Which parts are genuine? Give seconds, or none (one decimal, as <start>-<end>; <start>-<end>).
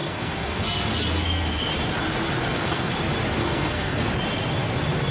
1.7-2.4; 2.9-3.4; 4.1-5.1